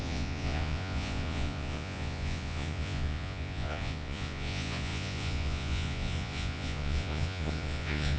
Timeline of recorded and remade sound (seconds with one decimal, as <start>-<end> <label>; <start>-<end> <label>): 0.0-8.2 remade